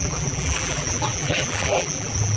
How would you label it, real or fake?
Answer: fake